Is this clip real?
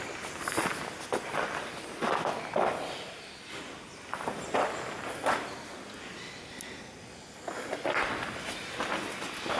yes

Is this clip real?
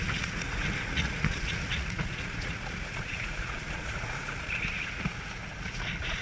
no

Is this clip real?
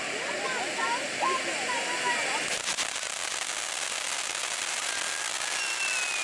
yes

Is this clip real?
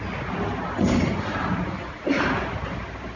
yes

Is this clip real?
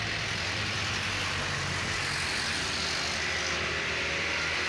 yes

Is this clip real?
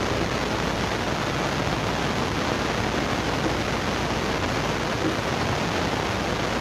yes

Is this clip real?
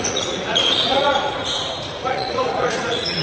no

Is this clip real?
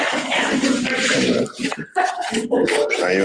yes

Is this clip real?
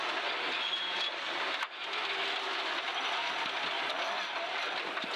yes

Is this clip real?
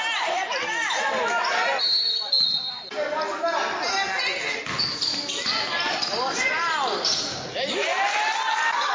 yes